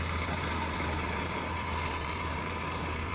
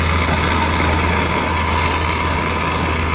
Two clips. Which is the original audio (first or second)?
second